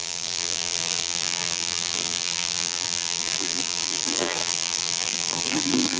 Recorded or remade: remade